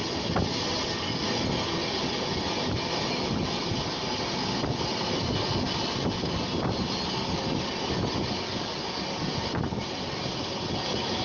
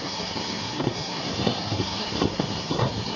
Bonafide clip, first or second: first